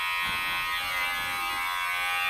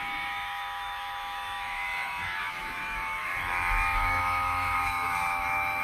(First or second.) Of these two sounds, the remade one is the second